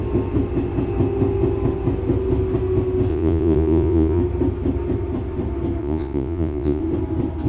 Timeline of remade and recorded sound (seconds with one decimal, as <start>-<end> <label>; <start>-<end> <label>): 0.0-3.1 recorded; 3.1-4.2 remade; 4.2-5.8 recorded; 5.8-6.8 remade; 6.8-7.5 recorded